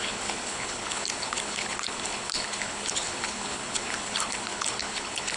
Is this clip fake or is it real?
fake